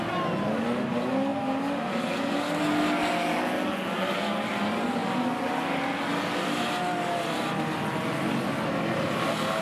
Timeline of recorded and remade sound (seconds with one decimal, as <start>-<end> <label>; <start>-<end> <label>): 0.0-9.6 recorded